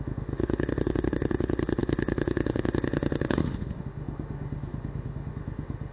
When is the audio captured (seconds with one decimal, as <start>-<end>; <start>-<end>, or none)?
none